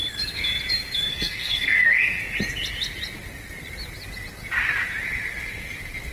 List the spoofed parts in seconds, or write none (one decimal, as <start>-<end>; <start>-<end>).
1.1-2.2